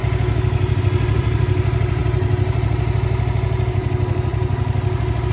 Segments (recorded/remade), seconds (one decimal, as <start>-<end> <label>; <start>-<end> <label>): 0.0-0.8 recorded; 0.8-2.0 remade; 2.0-3.7 recorded; 3.7-4.3 remade; 4.3-5.3 recorded